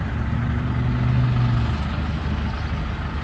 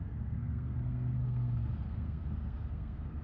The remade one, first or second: second